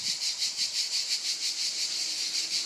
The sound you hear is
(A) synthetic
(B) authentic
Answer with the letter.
B